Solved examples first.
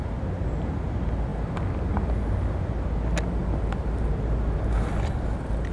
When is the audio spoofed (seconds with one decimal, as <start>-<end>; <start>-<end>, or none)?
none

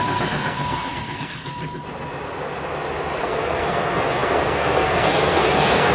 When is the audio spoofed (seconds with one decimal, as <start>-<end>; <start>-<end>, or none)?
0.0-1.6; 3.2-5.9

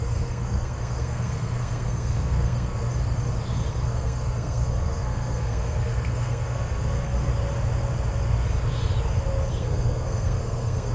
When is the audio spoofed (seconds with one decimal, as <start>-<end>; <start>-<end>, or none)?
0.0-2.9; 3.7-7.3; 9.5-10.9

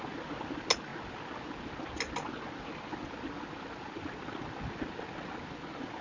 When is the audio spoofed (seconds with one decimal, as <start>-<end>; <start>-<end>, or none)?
none